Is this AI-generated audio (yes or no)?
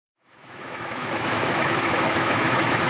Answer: yes